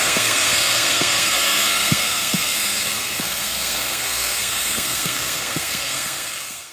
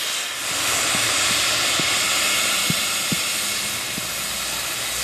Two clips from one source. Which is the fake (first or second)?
first